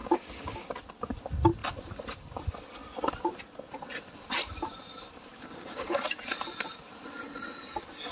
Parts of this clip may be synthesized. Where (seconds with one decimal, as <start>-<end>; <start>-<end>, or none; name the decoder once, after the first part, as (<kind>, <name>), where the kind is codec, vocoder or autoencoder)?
0.0-0.7 (codec, DAC); 5.3-6.0

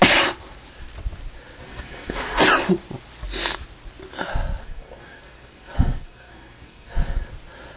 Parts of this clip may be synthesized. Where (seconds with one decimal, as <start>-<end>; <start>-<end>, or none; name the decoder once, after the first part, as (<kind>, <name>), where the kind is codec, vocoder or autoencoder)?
1.6-2.4 (codec, SNAC); 4.6-7.3

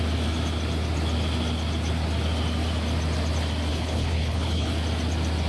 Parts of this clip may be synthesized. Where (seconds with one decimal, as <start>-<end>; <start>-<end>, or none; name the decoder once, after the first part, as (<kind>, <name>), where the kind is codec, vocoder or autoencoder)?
3.7-4.7 (codec, HILCodec)